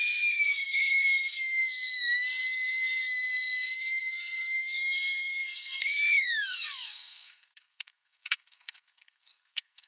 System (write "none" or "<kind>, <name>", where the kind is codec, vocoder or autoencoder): codec, SNAC